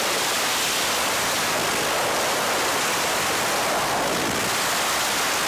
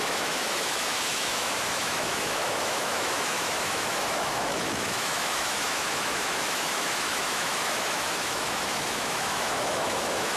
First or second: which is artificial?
second